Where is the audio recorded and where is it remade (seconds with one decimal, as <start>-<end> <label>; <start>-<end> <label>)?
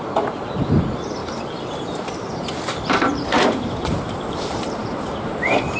0.0-5.8 remade